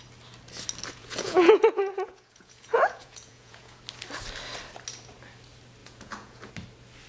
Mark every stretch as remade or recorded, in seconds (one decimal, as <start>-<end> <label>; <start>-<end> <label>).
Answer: 0.0-1.0 recorded; 1.0-3.8 remade; 3.8-5.8 recorded; 5.8-6.5 remade; 6.5-7.1 recorded